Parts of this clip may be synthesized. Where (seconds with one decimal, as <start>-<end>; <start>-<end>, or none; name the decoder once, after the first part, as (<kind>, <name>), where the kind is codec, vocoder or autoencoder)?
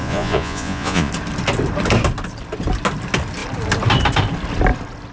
0.0-1.1 (vocoder, Vocos)